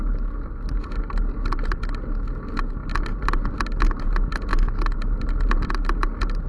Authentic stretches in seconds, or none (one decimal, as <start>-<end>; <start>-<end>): 0.0-6.5